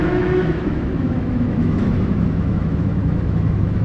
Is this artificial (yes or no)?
yes